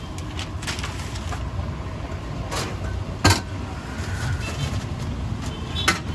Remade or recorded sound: recorded